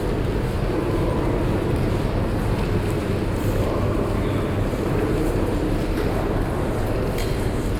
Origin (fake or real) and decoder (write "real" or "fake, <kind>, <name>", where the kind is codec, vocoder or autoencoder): real